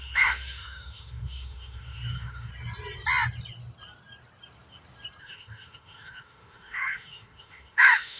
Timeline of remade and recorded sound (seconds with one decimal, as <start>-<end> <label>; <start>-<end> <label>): 0.0-2.5 remade; 2.5-5.2 recorded; 5.2-8.2 remade